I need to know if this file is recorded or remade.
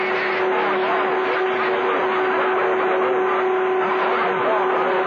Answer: recorded